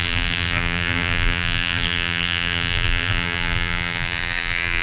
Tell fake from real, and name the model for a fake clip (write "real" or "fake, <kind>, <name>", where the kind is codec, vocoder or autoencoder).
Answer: fake, vocoder, BigVGAN v2